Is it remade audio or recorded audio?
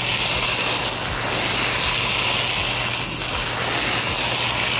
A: recorded